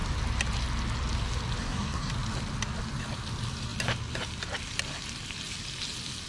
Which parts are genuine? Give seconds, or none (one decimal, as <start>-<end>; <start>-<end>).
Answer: 0.0-1.6; 2.1-6.3